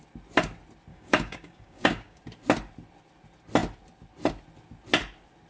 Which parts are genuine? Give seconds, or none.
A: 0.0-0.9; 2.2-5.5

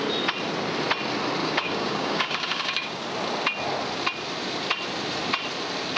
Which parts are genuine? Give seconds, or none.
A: 0.0-1.4; 3.0-6.0